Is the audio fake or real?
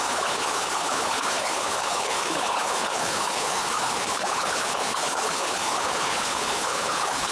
fake